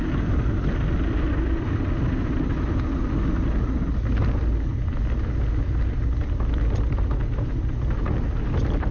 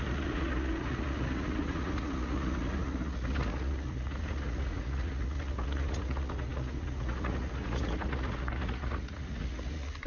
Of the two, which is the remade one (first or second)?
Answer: second